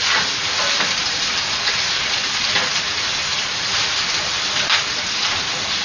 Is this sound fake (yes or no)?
no